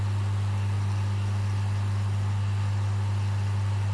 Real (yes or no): yes